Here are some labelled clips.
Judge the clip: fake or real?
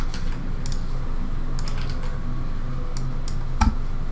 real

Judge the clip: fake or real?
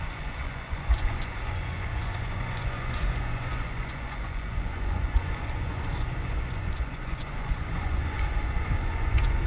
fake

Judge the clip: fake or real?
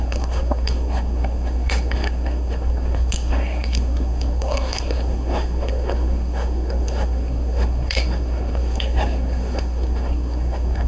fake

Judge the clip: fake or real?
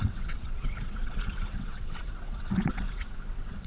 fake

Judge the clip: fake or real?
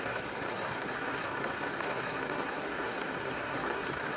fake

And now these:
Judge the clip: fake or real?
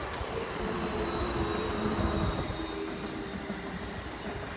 real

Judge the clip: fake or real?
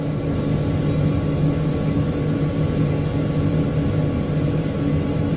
real